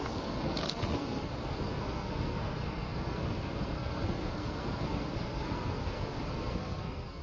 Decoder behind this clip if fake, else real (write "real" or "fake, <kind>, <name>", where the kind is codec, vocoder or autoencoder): fake, codec, SNAC